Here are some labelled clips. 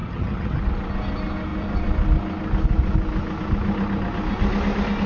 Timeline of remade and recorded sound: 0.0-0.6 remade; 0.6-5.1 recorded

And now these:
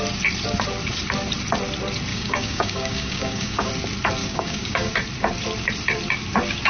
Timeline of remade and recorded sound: 0.0-2.1 recorded; 2.1-3.7 remade; 3.7-4.2 recorded; 4.2-4.9 remade; 4.9-6.7 recorded

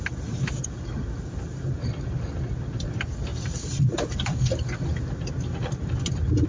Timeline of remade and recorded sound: 0.0-6.5 recorded

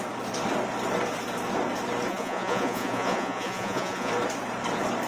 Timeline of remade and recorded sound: 0.0-2.1 recorded; 2.1-4.1 remade; 4.1-5.1 recorded

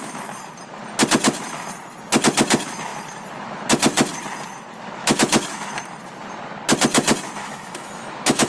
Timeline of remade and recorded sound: 0.0-5.0 recorded; 5.0-5.7 remade; 5.7-7.4 recorded; 7.4-8.5 remade